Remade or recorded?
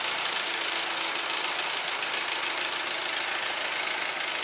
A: recorded